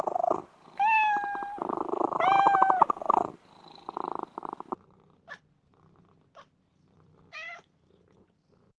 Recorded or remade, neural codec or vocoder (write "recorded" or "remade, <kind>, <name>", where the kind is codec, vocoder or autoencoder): recorded